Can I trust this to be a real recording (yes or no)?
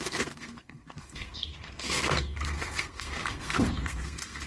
no